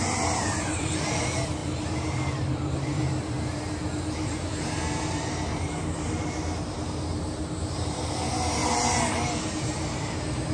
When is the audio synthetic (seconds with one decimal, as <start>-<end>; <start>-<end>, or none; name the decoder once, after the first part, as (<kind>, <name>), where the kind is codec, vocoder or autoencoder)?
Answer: 0.0-8.6 (vocoder, BigVGAN v2); 9.4-10.5